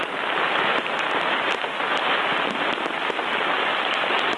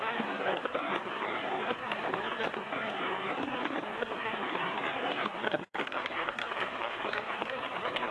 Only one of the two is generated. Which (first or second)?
second